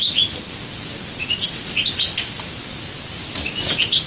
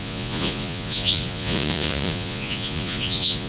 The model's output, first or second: second